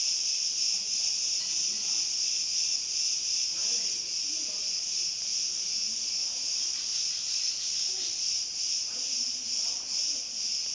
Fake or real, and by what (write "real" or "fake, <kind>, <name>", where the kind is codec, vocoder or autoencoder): fake, vocoder, BigVGAN v2